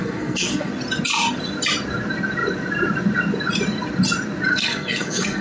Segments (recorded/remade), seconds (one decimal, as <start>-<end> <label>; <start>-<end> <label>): 0.0-0.7 remade; 0.7-4.5 recorded; 4.5-5.4 remade

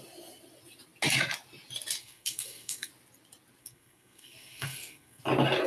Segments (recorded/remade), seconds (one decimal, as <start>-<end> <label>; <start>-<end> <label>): 0.0-2.0 recorded; 2.0-2.9 remade; 2.9-3.6 recorded; 3.6-5.2 remade; 5.2-5.7 recorded

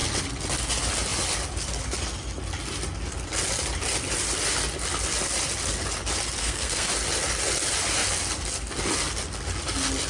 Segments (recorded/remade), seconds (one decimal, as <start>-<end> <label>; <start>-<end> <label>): 0.0-6.4 recorded; 6.4-6.9 remade; 6.9-10.1 recorded